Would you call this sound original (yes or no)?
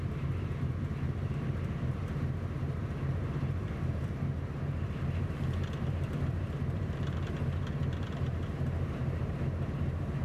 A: no